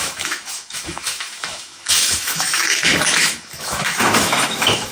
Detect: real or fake fake